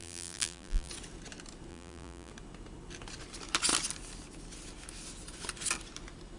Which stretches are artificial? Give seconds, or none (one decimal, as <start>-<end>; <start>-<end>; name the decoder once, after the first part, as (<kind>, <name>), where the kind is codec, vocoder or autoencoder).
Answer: 0.0-0.9 (vocoder, BigVGAN v2); 1.7-2.3